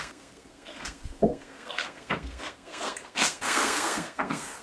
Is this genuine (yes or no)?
no